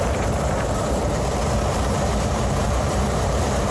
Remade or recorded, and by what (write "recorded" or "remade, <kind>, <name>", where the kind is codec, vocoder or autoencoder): remade, vocoder, BigVGAN v2